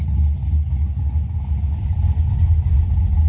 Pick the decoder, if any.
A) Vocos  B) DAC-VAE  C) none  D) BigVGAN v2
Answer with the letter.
C